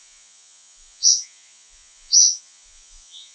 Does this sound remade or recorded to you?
remade